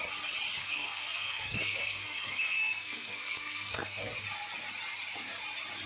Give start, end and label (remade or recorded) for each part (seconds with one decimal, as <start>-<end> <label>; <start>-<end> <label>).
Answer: 0.0-0.6 recorded; 0.6-4.1 remade; 4.1-5.9 recorded

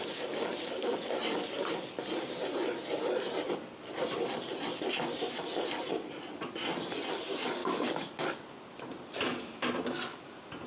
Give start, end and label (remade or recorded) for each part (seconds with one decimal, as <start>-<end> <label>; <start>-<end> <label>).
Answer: 0.0-7.6 recorded; 7.6-8.1 remade; 8.1-10.7 recorded

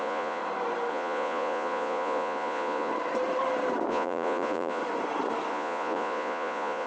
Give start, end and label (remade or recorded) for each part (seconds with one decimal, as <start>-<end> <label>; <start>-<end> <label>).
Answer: 0.0-0.4 remade; 0.4-0.9 recorded; 0.9-2.9 remade; 2.9-3.9 recorded; 3.9-4.8 remade; 4.8-5.5 recorded; 5.5-6.9 remade

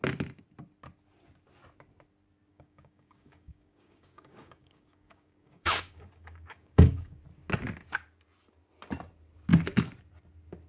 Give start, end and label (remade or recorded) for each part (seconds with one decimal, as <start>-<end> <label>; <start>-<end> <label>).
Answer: 0.0-2.5 recorded; 2.5-7.2 remade; 7.2-10.7 recorded

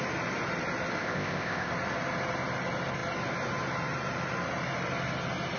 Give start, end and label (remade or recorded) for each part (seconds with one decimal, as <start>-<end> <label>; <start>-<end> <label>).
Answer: 0.0-1.0 recorded; 1.0-1.7 remade; 1.7-5.6 recorded

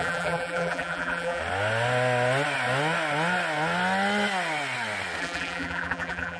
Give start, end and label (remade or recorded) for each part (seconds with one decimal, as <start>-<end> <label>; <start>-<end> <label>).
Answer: 0.0-1.4 remade; 1.4-5.2 recorded; 5.2-6.4 remade

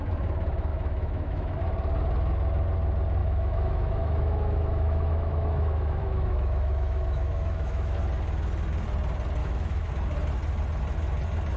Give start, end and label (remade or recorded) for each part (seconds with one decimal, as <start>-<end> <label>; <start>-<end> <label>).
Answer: 0.0-0.7 recorded; 0.7-1.6 remade; 1.6-3.2 recorded; 3.2-8.0 remade; 8.0-9.4 recorded; 9.4-9.9 remade; 9.9-11.6 recorded